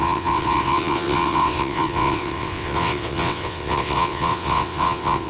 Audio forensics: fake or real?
fake